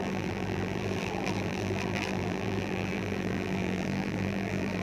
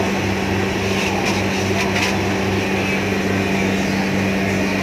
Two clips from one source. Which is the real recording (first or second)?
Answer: second